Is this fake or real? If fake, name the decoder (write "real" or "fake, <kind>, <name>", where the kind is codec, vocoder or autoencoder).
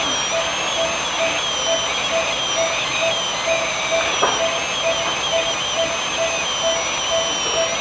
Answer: real